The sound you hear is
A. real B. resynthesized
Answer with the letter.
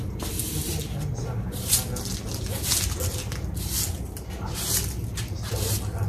A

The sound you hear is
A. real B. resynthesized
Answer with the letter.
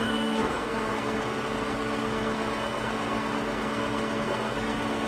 B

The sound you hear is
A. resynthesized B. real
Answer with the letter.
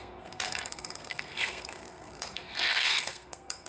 A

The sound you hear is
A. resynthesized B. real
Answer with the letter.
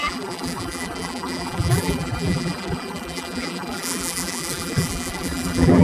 A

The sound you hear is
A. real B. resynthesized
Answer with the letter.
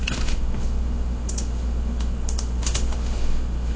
B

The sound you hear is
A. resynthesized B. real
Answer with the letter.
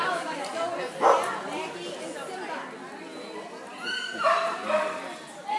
B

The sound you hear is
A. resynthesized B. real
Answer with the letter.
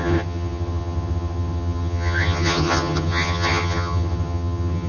A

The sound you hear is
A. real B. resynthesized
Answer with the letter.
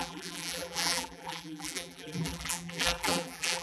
B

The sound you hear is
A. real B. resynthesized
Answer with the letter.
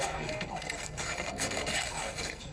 B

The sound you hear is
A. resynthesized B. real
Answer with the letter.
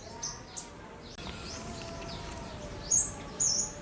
B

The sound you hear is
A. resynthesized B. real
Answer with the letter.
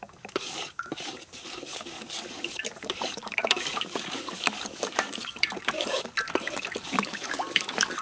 A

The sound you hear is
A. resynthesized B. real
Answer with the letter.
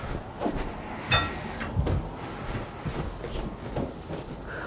B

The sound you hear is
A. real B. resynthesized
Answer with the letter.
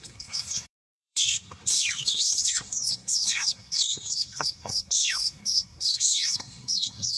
B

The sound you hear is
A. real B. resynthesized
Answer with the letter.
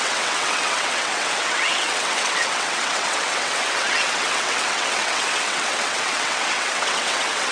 B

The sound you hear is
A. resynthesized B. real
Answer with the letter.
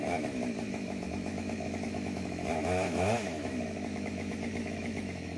A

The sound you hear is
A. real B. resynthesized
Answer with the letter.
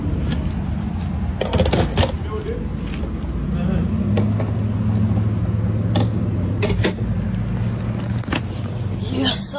A